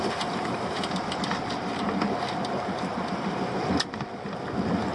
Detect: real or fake real